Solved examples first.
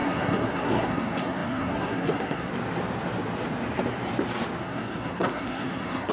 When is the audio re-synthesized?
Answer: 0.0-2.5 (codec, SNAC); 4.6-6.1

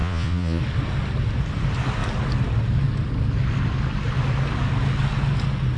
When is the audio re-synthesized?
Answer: 0.0-0.6 (vocoder, Vocos)

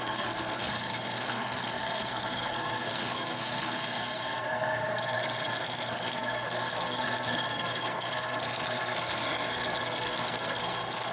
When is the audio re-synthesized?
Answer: 0.0-11.1 (codec, SNAC)

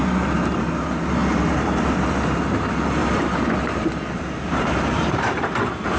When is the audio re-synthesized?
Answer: 3.0-5.6 (vocoder, BigVGAN v2)

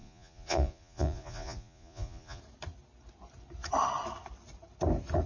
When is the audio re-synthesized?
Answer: 0.0-2.4 (vocoder, Vocos)

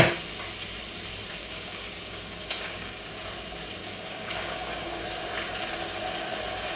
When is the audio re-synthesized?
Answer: 1.4-3.1 (codec, DAC); 3.8-5.0

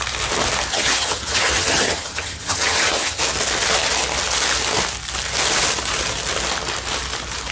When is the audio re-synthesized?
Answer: 0.7-3.2 (vocoder, HiFi-GAN)